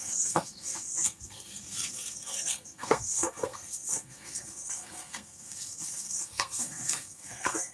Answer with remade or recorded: remade